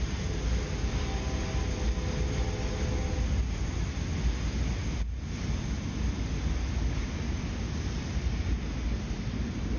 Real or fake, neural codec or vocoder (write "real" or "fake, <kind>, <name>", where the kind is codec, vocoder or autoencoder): real